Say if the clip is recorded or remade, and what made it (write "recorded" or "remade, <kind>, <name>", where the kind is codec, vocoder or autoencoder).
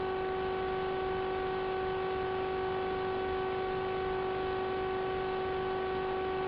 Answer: recorded